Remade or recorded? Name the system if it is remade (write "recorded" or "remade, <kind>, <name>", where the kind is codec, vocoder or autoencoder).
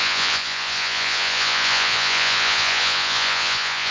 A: remade, vocoder, Vocos